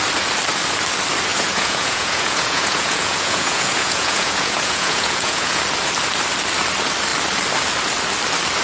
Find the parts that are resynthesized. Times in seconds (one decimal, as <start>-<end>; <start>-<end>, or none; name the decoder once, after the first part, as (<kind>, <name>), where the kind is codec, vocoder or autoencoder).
1.3-5.6 (vocoder, Vocos)

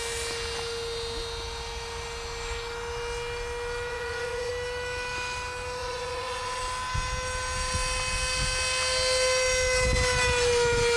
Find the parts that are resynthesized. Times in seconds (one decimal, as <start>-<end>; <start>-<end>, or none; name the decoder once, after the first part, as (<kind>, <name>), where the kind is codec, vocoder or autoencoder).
3.9-4.5 (vocoder, Vocos); 5.8-6.6

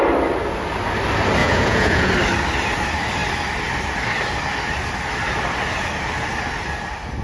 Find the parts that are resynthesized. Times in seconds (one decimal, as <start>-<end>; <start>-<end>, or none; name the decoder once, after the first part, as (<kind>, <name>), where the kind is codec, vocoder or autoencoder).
1.4-2.1 (vocoder, Vocos)

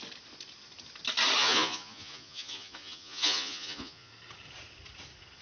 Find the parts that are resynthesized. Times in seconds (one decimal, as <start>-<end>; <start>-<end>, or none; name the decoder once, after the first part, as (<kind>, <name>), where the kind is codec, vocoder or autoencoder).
1.4-4.1 (vocoder, Vocos)

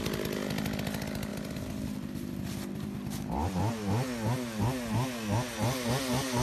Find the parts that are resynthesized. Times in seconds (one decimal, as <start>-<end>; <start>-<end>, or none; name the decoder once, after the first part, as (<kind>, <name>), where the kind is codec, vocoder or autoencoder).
none

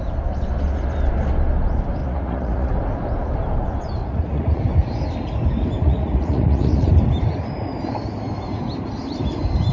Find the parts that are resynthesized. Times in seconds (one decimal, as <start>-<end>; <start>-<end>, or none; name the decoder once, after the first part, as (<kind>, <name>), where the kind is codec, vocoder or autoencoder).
2.0-2.7 (vocoder, Vocos); 4.0-4.6; 5.8-6.9

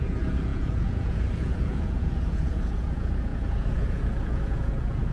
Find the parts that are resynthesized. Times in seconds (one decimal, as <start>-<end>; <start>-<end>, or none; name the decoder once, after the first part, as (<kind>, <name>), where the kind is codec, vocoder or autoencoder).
0.0-5.1 (vocoder, Vocos)

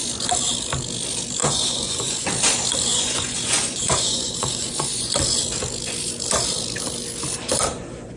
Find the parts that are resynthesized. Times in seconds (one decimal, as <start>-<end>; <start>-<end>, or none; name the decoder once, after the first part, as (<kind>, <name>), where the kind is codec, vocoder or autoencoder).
1.4-2.3 (vocoder, Vocos); 2.9-5.1